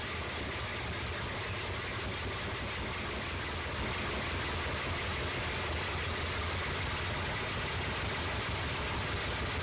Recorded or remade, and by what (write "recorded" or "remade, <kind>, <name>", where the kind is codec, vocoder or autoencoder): recorded